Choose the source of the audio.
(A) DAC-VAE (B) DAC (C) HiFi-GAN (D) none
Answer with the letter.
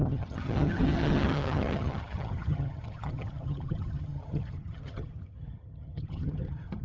C